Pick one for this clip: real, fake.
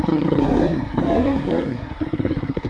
fake